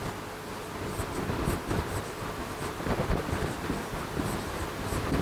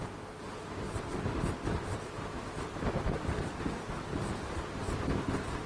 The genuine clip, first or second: second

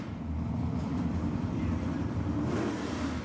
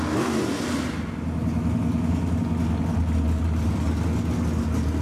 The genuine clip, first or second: second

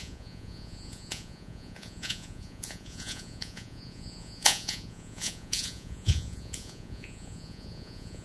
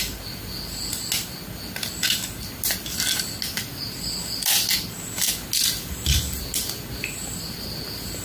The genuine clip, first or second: second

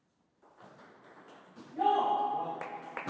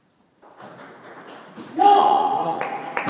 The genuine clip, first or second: first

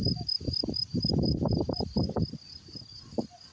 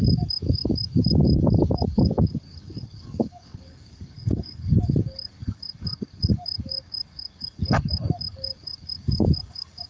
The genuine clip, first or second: first